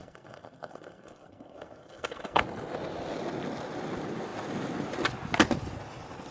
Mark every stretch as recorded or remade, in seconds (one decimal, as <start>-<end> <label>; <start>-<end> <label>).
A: 0.0-2.4 remade; 2.4-6.3 recorded